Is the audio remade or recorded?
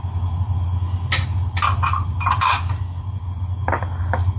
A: recorded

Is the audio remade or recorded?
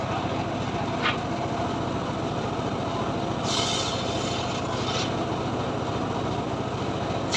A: recorded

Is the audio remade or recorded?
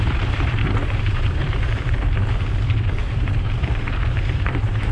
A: remade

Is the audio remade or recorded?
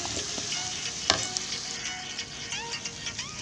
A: recorded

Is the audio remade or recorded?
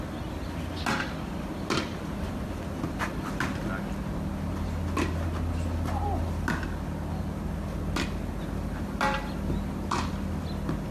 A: recorded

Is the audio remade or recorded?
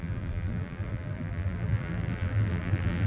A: remade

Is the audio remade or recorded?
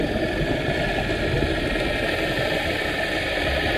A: recorded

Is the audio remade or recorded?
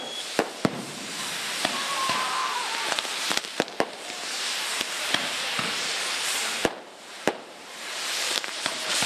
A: remade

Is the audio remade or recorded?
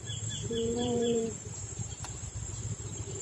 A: remade